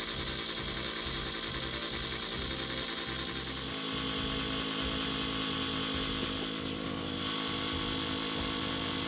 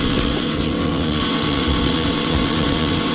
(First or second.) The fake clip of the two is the second